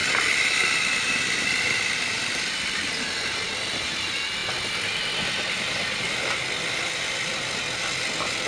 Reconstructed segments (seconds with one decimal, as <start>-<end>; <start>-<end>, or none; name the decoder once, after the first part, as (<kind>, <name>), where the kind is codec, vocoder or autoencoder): 0.0-3.0 (vocoder, BigVGAN v2)